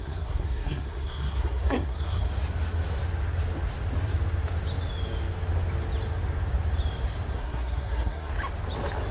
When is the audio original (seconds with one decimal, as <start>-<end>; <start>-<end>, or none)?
2.2-7.3; 8.3-9.1